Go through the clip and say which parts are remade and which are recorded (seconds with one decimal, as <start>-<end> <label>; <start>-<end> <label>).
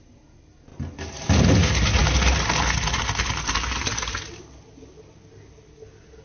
0.0-6.2 recorded